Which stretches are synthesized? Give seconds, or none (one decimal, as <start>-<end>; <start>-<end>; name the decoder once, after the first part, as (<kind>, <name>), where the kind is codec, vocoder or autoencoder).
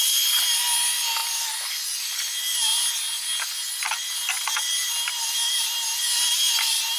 none